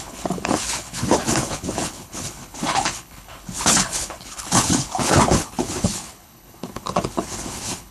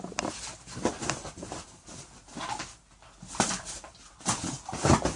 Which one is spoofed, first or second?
first